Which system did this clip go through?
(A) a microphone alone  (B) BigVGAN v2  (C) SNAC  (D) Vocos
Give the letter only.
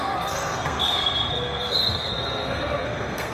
C